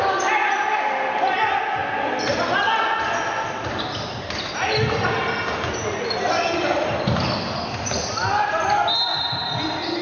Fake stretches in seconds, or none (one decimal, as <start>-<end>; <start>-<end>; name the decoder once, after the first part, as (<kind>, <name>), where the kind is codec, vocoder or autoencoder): none